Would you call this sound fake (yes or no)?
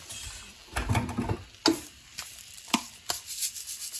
no